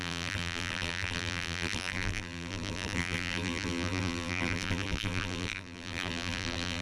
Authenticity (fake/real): fake